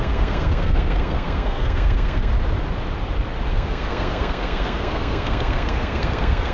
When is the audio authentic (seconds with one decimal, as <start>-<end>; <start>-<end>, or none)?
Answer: 2.3-3.5